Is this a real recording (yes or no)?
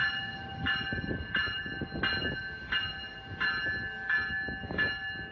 yes